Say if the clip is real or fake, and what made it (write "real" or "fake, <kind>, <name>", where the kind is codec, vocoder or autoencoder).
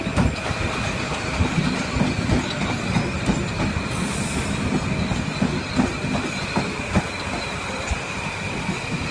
real